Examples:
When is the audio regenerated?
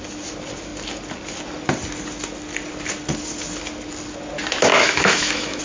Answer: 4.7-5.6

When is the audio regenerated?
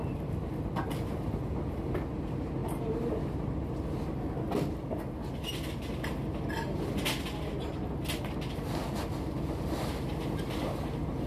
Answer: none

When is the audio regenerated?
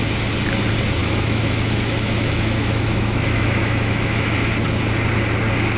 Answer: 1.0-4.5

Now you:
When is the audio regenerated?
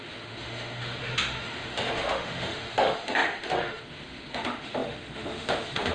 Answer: 0.0-5.9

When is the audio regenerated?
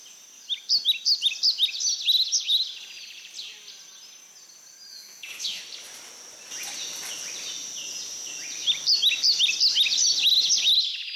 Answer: 4.9-5.6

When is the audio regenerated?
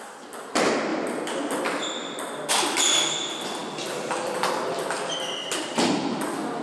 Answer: none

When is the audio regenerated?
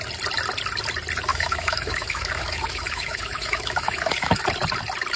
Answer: 1.3-4.4